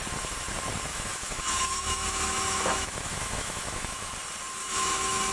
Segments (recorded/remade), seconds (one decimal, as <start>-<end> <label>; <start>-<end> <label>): 0.0-0.9 recorded; 0.9-4.1 remade; 4.1-4.6 recorded; 4.6-5.3 remade